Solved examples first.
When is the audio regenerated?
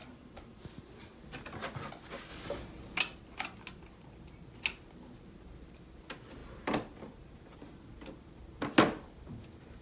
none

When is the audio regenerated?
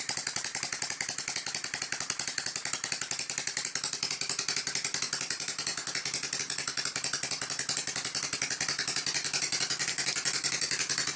0.0-5.7 (vocoder, BigVGAN v2); 6.4-11.2